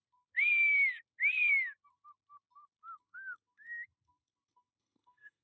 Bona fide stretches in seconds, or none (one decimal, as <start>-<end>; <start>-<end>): 0.0-3.0